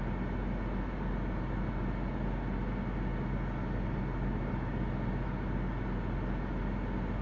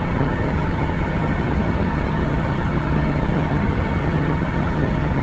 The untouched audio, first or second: first